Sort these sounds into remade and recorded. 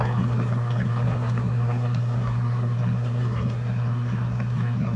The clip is remade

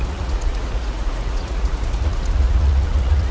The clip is remade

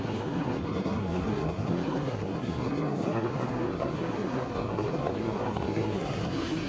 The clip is remade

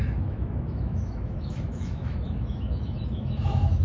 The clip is remade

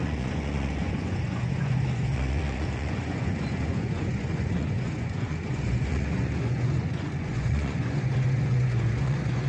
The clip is remade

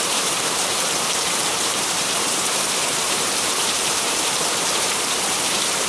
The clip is remade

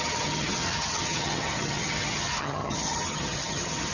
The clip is remade